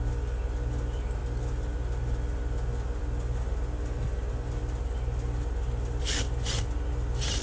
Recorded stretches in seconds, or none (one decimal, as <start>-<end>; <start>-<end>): 0.0-7.4